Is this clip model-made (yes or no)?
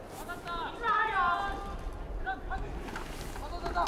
no